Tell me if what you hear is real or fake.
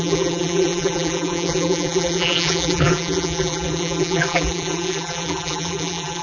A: fake